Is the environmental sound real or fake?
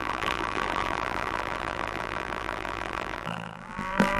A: fake